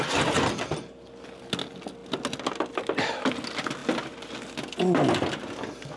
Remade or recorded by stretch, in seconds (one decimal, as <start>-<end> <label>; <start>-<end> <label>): 0.0-6.0 recorded